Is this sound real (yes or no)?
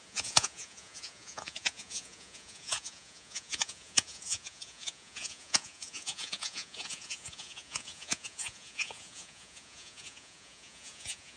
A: no